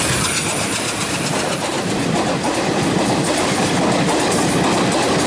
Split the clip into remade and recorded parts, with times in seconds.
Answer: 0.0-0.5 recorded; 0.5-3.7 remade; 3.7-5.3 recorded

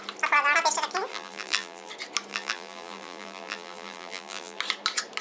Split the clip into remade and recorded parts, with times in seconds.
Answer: 0.0-1.1 recorded; 1.1-1.9 remade; 1.9-2.3 recorded; 2.3-4.6 remade; 4.6-5.2 recorded

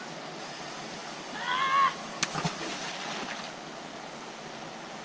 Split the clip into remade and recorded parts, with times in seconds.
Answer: 0.0-5.0 recorded

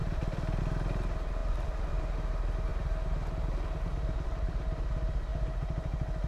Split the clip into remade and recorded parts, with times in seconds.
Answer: 0.0-0.6 remade; 0.6-1.4 recorded; 1.4-2.0 remade; 2.0-6.3 recorded